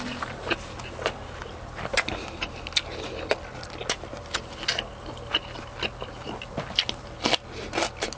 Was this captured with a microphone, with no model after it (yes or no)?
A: yes